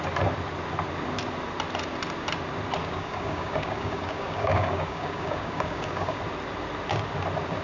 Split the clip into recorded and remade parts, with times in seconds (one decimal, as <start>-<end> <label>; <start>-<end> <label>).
0.0-2.8 recorded; 2.8-6.2 remade; 6.2-7.6 recorded